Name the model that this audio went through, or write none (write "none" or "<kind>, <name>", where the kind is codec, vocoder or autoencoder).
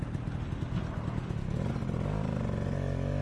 none